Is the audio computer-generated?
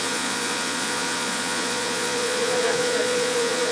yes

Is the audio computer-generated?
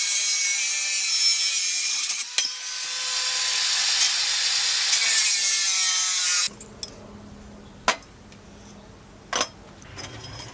no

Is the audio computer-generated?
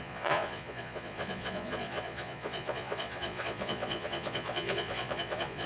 yes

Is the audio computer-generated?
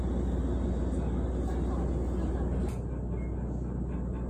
no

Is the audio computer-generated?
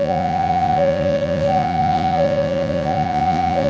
yes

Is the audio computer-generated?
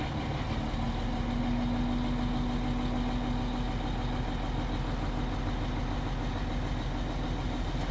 no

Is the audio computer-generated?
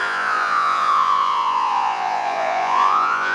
yes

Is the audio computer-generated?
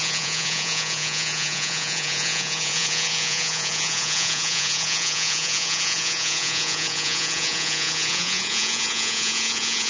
yes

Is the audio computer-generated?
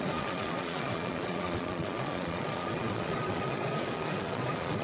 yes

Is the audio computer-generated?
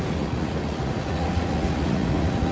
yes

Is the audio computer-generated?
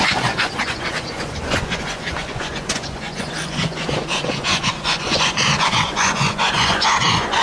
yes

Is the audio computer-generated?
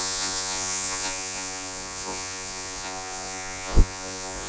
yes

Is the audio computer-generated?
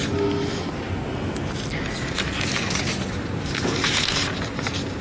no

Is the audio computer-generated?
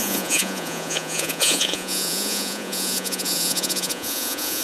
yes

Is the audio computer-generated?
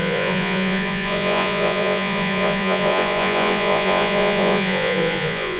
yes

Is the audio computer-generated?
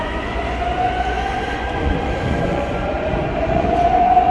yes